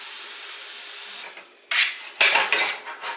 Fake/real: real